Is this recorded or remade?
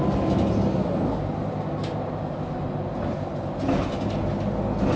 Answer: recorded